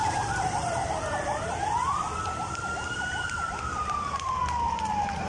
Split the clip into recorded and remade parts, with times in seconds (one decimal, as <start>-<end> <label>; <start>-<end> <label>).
0.0-4.4 remade; 4.4-5.3 recorded